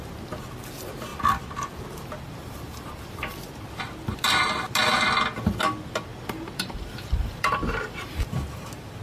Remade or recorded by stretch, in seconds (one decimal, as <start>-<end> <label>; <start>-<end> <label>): 0.0-2.4 recorded; 2.4-3.4 remade; 3.4-6.1 recorded; 6.1-8.3 remade; 8.3-9.0 recorded